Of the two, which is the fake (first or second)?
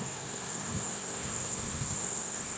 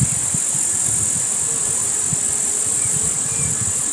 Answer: first